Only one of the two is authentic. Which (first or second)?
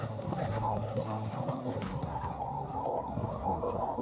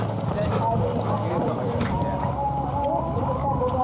second